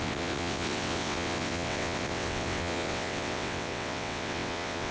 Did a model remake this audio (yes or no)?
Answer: yes